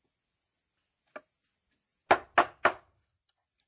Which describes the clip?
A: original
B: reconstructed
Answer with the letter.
A